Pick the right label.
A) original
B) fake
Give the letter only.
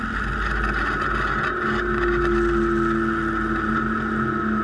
A